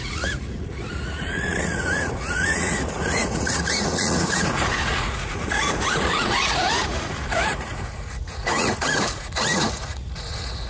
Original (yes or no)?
no